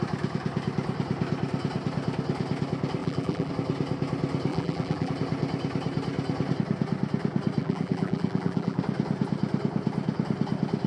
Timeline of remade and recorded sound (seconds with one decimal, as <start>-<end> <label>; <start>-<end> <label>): 0.0-3.0 recorded; 3.0-3.5 remade; 3.5-4.5 recorded; 4.5-5.1 remade; 5.1-7.6 recorded; 7.6-8.8 remade; 8.8-10.9 recorded